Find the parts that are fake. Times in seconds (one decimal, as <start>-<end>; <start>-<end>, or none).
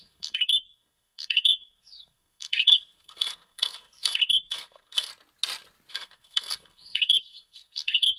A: 0.0-5.1; 5.9-8.2